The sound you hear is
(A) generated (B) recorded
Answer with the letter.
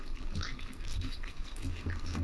A